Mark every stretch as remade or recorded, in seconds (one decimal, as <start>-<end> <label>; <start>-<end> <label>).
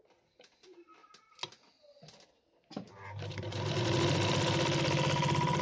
0.0-5.6 recorded